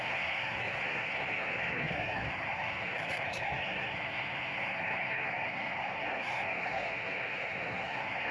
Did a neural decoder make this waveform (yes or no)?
yes